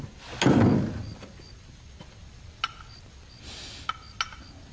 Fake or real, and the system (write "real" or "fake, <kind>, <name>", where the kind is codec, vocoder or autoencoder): real